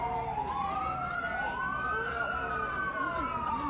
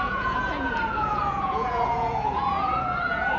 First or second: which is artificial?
second